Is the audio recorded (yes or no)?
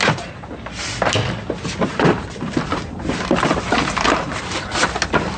yes